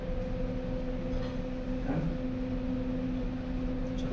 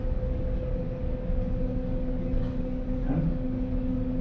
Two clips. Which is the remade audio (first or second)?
second